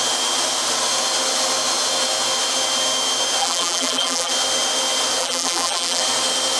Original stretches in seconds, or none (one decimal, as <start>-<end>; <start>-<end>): 0.0-3.4; 4.3-5.2; 6.0-6.6